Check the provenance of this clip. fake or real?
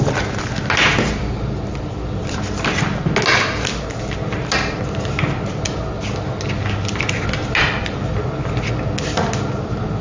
real